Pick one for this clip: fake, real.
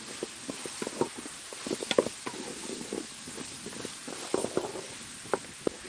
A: real